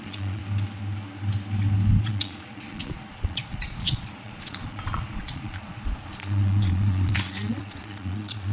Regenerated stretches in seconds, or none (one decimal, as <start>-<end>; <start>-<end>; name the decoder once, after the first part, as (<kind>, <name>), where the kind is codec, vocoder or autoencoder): 0.0-0.4 (vocoder, Vocos); 2.0-8.5